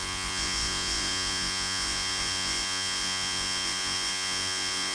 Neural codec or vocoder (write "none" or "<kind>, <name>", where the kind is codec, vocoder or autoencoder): vocoder, Vocos